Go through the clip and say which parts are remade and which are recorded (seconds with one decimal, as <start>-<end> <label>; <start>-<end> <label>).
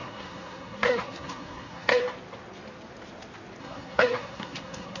0.0-2.0 remade; 2.0-3.6 recorded; 3.6-5.0 remade